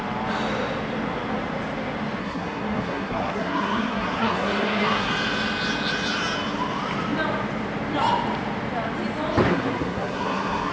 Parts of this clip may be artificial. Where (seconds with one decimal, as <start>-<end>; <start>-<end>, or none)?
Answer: 2.2-5.1; 9.5-10.7